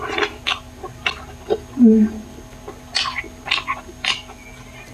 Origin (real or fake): real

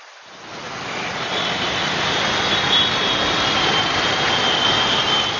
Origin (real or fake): real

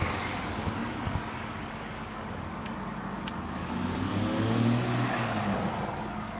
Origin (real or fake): fake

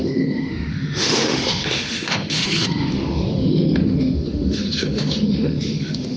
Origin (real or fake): fake